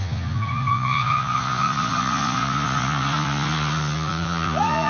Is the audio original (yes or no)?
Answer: no